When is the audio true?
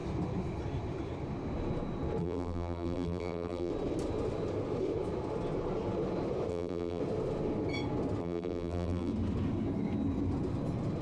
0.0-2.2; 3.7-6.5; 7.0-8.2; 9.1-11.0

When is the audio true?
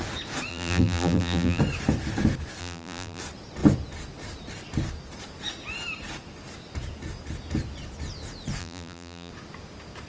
0.0-0.5; 1.6-2.6; 3.2-8.6; 9.3-10.1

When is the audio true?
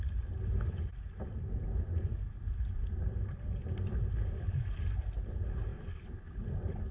0.0-5.7; 6.4-6.9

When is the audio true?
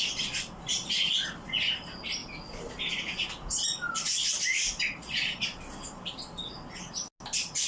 0.0-0.7; 1.3-2.2; 2.9-7.7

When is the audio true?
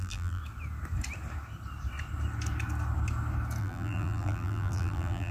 0.4-3.6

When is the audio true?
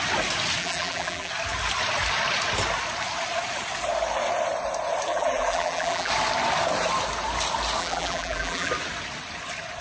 0.0-0.6; 1.3-5.1; 6.1-7.8; 8.7-9.8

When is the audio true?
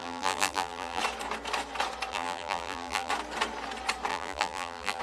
1.0-2.1; 3.1-4.1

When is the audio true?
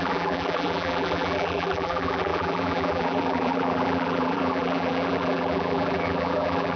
none